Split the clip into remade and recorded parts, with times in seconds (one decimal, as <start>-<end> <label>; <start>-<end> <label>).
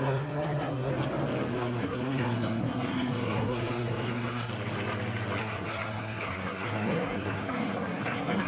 0.0-0.9 remade; 0.9-1.5 recorded; 1.5-4.5 remade; 4.5-5.4 recorded; 5.4-8.5 remade